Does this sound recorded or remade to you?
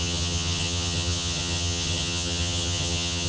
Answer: remade